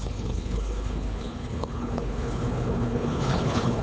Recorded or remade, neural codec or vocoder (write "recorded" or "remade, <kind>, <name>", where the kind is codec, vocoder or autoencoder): remade, codec, HILCodec